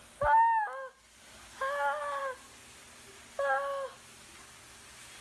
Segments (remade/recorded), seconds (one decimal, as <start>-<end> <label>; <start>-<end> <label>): 0.0-5.2 recorded